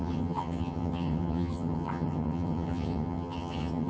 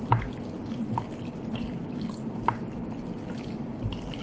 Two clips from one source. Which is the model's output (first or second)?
first